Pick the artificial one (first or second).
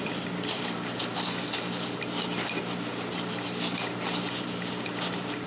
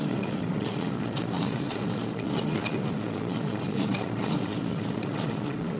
second